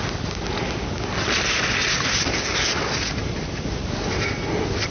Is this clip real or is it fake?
real